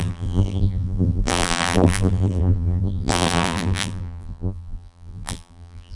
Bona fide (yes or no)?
no